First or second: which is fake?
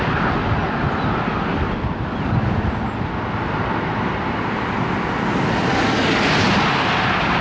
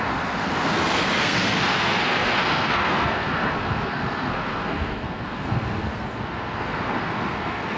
second